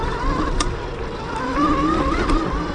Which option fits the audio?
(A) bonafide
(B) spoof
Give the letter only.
B